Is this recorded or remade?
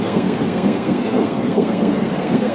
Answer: remade